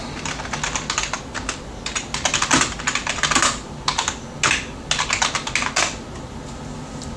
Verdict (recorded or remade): recorded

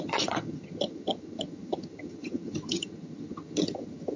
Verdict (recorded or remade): remade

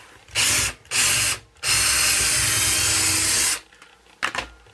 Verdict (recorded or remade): recorded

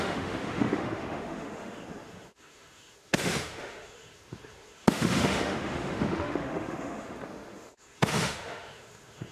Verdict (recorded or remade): remade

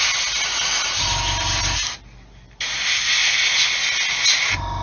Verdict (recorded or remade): recorded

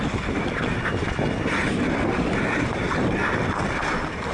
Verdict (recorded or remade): remade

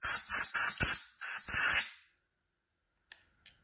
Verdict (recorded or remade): recorded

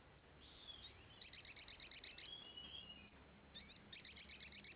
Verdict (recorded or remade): recorded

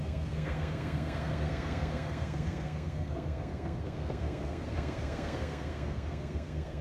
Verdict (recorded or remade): remade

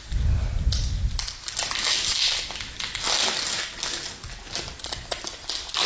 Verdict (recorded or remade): recorded